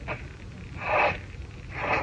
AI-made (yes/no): no